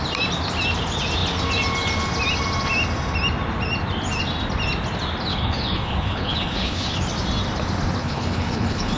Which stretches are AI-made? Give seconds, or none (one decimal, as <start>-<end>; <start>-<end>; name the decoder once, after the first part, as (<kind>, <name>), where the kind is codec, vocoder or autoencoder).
5.3-7.0 (codec, HILCodec); 8.0-9.0